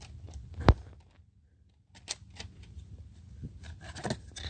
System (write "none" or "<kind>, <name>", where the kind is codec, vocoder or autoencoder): none